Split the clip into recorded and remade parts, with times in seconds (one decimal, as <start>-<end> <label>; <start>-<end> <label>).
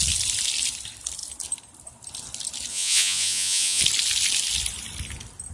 0.0-2.7 recorded; 2.7-3.8 remade; 3.8-5.5 recorded